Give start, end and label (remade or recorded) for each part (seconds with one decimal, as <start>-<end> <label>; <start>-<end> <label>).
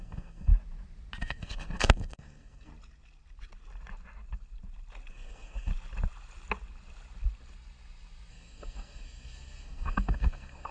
0.0-0.5 remade; 0.5-1.2 recorded; 1.2-2.7 remade; 2.7-5.1 recorded; 5.1-5.7 remade; 5.7-8.3 recorded; 8.3-10.7 remade